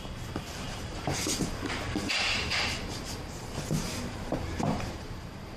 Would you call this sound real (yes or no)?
no